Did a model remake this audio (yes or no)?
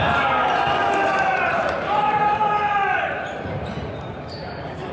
yes